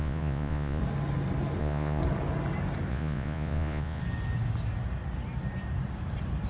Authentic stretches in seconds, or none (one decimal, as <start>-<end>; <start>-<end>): 0.8-1.6; 2.0-2.9; 4.0-6.5